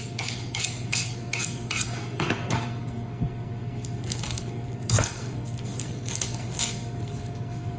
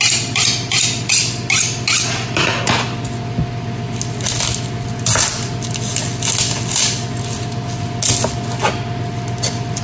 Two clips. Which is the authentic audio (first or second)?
second